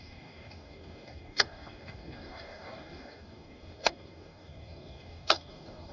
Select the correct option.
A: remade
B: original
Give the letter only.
A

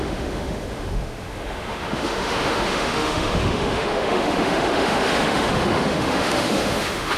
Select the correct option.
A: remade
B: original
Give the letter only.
A